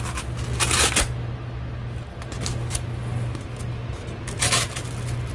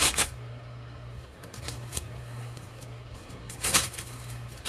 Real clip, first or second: first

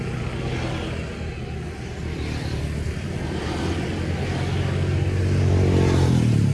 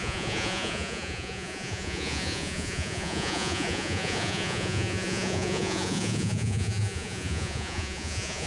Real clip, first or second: first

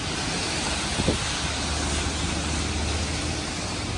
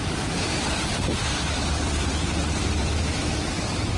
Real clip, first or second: first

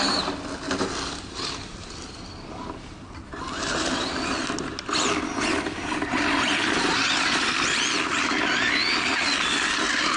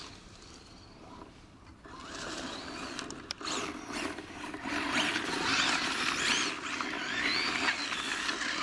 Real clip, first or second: first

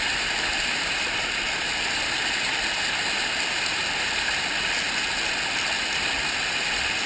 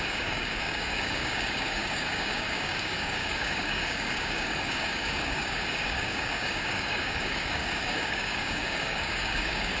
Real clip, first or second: first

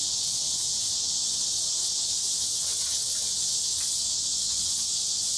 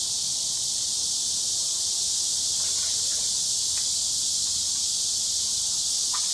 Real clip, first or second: second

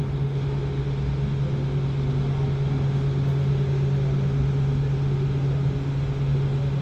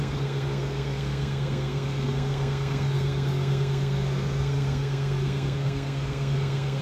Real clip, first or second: first